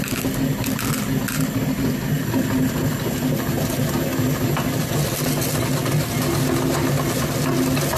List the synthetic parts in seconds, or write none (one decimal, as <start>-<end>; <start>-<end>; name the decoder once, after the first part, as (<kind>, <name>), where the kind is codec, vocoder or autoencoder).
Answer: none